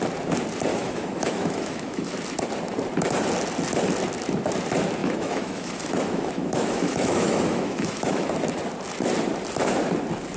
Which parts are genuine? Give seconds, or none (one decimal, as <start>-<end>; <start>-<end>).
0.0-0.7; 2.1-5.0; 8.3-10.4